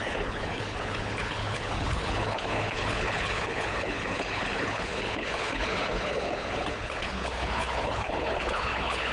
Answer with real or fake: fake